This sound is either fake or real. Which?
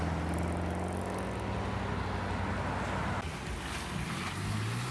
real